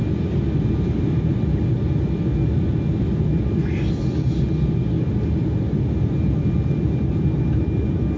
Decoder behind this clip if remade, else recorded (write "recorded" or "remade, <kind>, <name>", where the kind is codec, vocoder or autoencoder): recorded